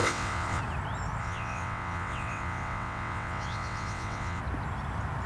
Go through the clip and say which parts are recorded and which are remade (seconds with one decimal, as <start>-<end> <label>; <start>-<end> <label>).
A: 0.0-0.6 remade; 0.6-1.2 recorded; 1.2-4.4 remade; 4.4-5.3 recorded